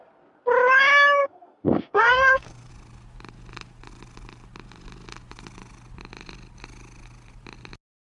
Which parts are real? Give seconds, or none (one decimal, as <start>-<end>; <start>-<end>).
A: 0.0-1.2; 2.7-8.2

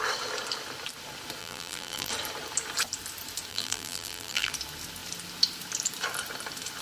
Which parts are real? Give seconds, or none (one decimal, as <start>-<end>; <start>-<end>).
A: 0.0-1.4; 2.1-3.5; 4.5-6.8